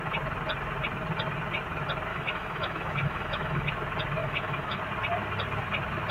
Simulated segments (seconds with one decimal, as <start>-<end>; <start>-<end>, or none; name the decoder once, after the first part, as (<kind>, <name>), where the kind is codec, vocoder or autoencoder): 2.1-3.7 (autoencoder, DAC-VAE); 4.2-4.8